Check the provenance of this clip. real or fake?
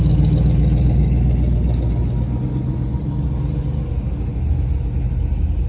real